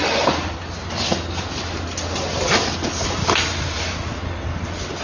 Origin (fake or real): real